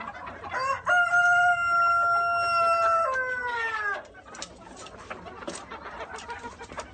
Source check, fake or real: real